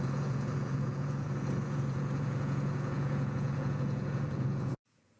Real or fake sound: fake